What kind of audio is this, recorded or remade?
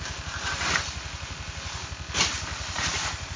recorded